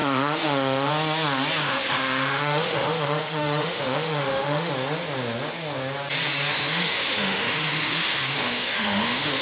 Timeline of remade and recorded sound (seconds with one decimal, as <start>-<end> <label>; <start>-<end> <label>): 0.0-0.9 remade; 0.9-1.6 recorded; 1.6-4.7 remade; 4.7-6.5 recorded; 6.5-9.4 remade